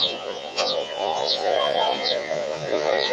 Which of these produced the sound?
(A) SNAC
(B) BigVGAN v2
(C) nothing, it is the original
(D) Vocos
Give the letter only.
D